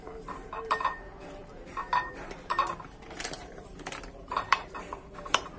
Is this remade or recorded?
remade